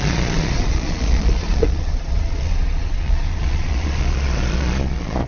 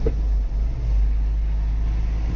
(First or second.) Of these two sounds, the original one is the second